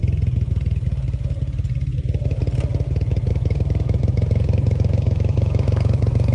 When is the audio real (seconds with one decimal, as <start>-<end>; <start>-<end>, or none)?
0.0-3.3